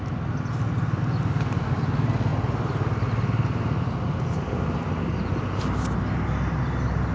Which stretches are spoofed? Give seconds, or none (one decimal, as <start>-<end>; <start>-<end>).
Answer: none